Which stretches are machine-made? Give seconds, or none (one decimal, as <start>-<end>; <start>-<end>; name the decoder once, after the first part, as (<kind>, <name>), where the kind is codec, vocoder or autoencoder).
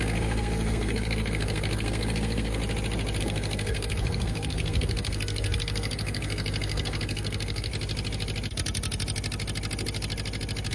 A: 0.0-2.6 (codec, SNAC); 3.2-7.7